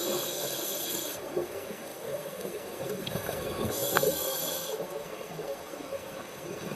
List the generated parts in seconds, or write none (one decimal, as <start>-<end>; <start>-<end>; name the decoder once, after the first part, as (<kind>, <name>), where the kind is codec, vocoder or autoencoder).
0.0-6.8 (codec, SNAC)